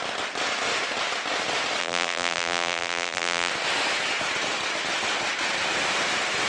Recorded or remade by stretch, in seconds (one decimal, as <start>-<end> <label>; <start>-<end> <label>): 0.0-1.8 recorded; 1.8-3.5 remade; 3.5-6.5 recorded

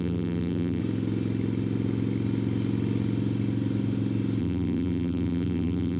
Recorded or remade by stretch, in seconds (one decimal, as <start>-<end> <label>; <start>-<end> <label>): 0.0-0.8 remade; 0.8-4.4 recorded; 4.4-6.0 remade

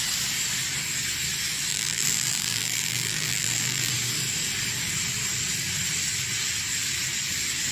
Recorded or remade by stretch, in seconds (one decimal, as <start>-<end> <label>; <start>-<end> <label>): 0.0-1.7 recorded; 1.7-3.9 remade; 3.9-7.7 recorded

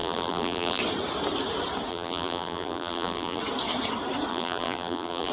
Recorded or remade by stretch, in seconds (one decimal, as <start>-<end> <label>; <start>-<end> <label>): 0.0-0.8 remade; 0.8-1.9 recorded; 1.9-3.4 remade; 3.4-4.3 recorded; 4.3-5.3 remade

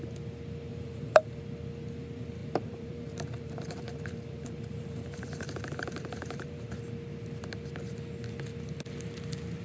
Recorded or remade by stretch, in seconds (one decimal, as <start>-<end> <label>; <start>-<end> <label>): 0.0-0.7 recorded; 0.7-1.4 remade; 1.4-2.4 recorded; 2.4-6.8 remade; 6.8-9.6 recorded

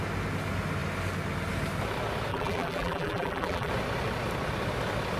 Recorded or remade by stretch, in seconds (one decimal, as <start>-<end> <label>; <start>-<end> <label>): 0.0-2.3 recorded; 2.3-3.7 remade; 3.7-5.2 recorded